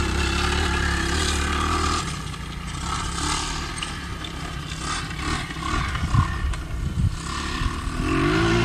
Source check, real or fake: real